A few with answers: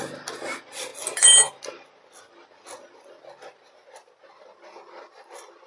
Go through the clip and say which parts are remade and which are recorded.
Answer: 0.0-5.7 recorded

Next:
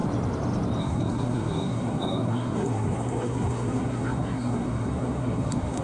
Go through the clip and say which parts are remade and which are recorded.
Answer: 0.0-0.8 recorded; 0.8-5.8 remade

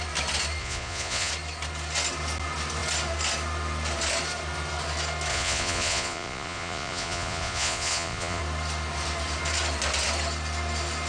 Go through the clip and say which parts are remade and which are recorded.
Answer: 0.0-0.6 recorded; 0.6-1.3 remade; 1.3-5.3 recorded; 5.3-8.4 remade; 8.4-11.1 recorded

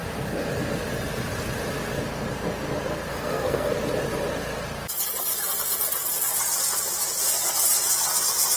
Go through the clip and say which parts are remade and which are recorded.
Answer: 0.0-3.1 recorded; 3.1-3.7 remade; 3.7-8.6 recorded

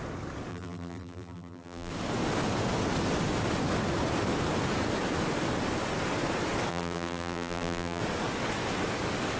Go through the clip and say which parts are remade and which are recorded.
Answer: 0.0-0.5 recorded; 0.5-1.9 remade; 1.9-6.7 recorded; 6.7-8.0 remade; 8.0-9.4 recorded

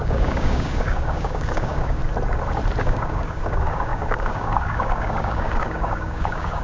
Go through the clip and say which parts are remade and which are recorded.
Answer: 0.0-2.0 remade; 2.0-2.8 recorded; 2.8-6.6 remade

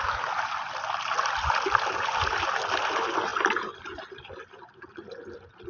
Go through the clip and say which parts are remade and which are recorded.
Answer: 0.0-5.7 recorded

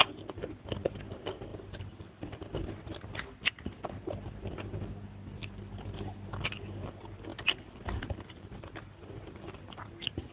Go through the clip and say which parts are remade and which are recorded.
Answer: 0.0-1.5 recorded; 1.5-6.6 remade; 6.6-7.3 recorded; 7.3-9.8 remade; 9.8-10.3 recorded